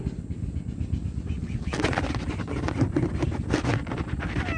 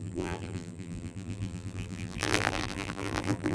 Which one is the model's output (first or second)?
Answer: second